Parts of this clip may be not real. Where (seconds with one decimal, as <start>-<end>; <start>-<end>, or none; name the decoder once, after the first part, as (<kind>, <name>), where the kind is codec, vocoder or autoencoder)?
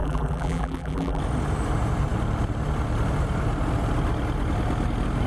0.0-1.2 (vocoder, BigVGAN v2)